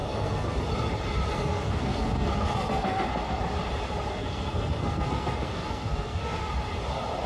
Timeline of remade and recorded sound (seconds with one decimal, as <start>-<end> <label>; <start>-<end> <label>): 0.0-0.6 remade; 0.6-1.3 recorded; 1.3-3.4 remade; 3.4-4.1 recorded; 4.1-6.5 remade; 6.5-7.3 recorded